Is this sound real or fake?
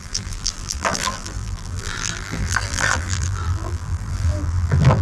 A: fake